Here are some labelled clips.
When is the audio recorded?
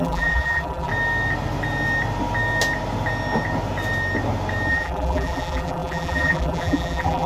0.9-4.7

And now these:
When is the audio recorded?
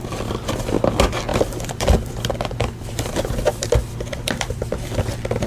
0.0-1.3; 4.6-5.5